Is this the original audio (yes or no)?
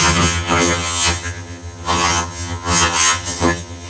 no